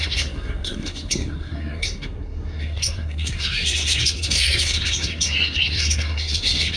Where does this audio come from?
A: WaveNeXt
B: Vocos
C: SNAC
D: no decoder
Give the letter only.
C